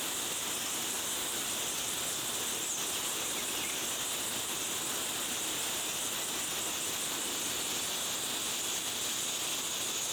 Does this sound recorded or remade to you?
recorded